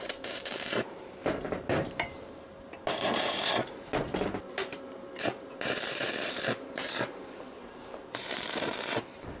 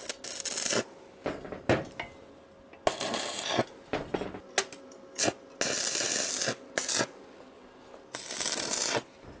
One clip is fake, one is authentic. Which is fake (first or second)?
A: first